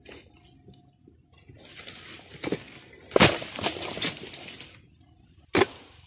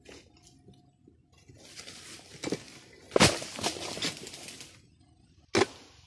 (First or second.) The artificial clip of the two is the first